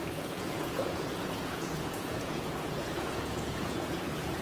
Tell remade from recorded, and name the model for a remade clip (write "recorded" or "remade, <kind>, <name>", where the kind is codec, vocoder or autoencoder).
remade, vocoder, Vocos